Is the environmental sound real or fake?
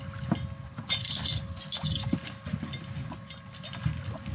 real